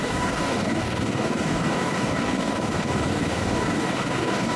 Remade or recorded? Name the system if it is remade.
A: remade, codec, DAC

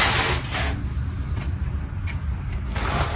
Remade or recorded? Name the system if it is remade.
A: recorded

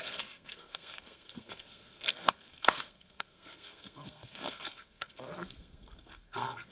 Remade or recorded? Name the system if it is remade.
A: remade, codec, SNAC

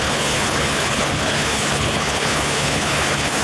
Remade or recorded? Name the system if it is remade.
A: remade, codec, HILCodec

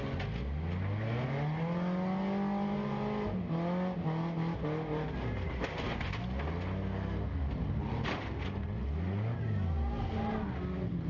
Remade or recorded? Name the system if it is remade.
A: recorded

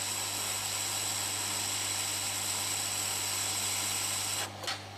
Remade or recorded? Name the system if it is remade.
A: recorded